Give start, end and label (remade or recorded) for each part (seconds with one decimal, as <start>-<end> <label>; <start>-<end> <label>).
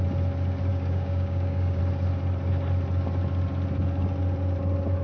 0.0-0.7 recorded; 0.7-1.8 remade; 1.8-5.0 recorded